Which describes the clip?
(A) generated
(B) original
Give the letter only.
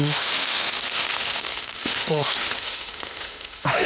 A